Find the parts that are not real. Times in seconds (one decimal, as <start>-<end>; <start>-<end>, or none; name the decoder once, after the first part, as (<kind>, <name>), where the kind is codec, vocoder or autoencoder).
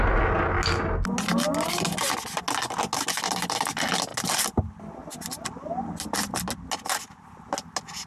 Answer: none